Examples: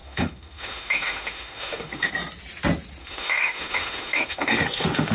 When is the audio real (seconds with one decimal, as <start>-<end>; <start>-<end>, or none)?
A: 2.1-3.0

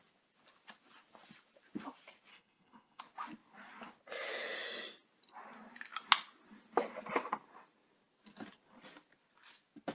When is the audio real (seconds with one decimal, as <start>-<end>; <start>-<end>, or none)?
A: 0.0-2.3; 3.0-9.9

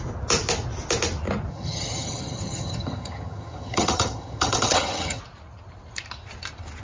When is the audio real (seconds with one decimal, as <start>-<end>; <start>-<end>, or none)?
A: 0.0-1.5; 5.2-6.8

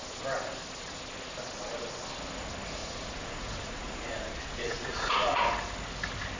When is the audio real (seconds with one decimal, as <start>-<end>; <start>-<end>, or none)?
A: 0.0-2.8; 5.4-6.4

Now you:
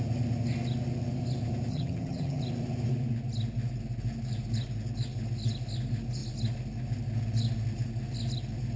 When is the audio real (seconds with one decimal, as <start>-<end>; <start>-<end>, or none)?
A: 0.0-1.7; 2.4-8.8

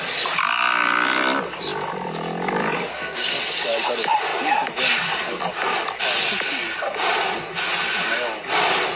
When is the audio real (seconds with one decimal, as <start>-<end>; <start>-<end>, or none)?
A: 0.0-2.9; 3.4-9.0

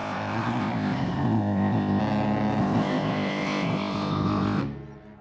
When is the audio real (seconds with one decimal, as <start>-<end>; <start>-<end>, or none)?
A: 2.0-2.6; 4.6-5.2

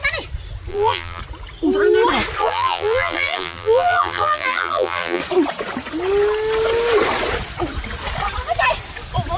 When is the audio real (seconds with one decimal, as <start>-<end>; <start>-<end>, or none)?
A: 0.0-0.7; 1.2-2.4; 5.2-9.4